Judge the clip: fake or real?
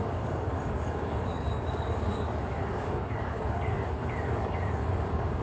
fake